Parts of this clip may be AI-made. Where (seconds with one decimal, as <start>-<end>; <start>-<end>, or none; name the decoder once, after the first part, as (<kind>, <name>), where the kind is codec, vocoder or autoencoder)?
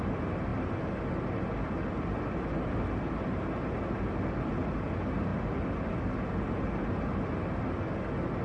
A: none